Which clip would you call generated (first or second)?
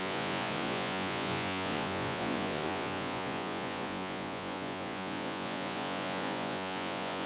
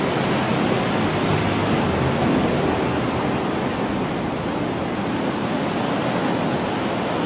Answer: first